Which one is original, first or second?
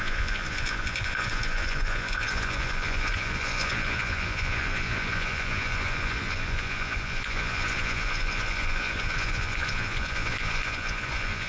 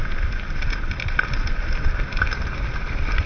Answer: second